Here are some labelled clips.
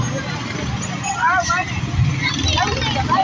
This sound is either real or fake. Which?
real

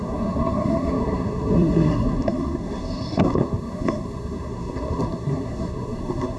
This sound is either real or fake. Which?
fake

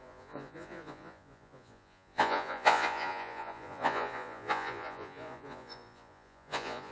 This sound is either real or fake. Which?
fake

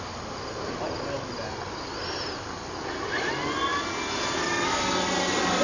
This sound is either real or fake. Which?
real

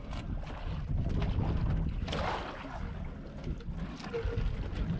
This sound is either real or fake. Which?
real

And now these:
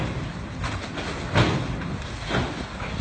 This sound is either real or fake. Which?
real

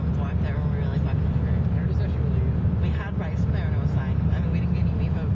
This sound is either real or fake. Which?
real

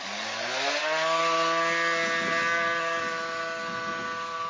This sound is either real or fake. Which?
real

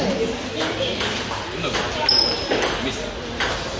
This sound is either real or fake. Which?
real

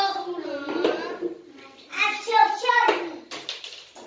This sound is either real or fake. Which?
real